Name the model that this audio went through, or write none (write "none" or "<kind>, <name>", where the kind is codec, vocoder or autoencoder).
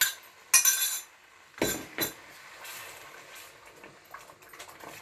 none